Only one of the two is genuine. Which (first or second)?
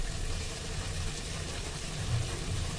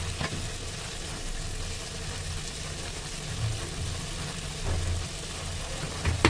second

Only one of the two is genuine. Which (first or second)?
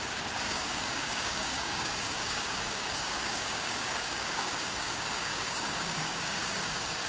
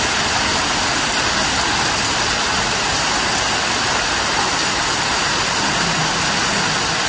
second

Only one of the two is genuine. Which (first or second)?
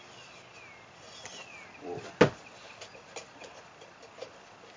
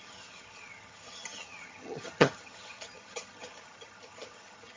first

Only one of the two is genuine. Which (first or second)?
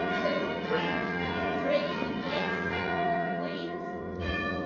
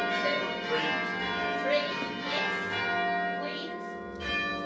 second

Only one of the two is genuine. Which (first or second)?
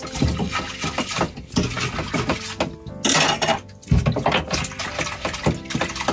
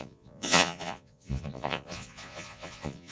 first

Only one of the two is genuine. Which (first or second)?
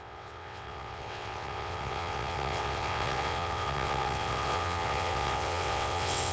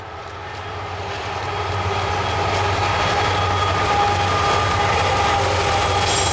second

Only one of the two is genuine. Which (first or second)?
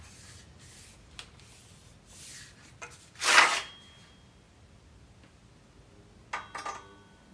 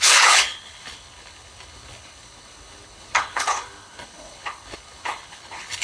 first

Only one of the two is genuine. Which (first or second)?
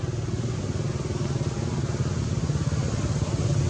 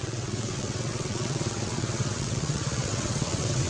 first